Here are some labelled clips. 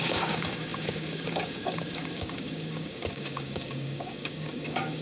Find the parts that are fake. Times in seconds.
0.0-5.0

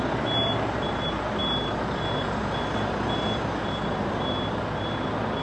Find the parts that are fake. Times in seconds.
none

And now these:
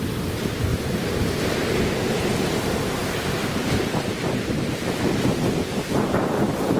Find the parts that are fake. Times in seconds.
0.7-1.8; 3.0-3.9; 5.3-6.1

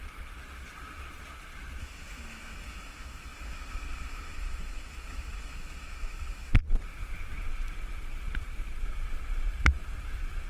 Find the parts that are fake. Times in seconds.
1.8-6.5